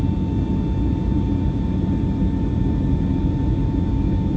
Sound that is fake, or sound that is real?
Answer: real